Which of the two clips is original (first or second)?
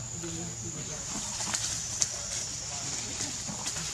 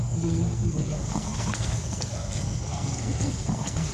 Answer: first